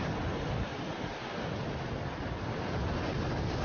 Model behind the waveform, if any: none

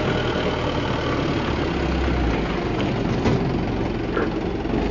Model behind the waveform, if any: none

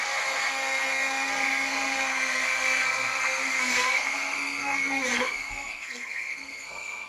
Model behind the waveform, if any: codec, SNAC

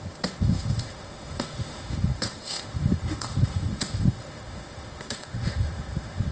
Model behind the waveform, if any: autoencoder, DAC-VAE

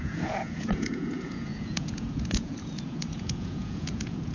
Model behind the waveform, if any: vocoder, Vocos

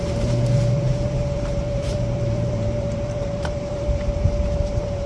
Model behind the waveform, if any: vocoder, BigVGAN v2